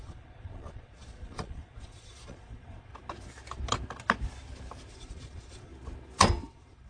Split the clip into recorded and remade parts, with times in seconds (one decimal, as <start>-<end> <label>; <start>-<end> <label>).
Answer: 0.0-2.9 remade; 2.9-4.9 recorded; 4.9-5.7 remade; 5.7-6.5 recorded; 6.5-6.9 remade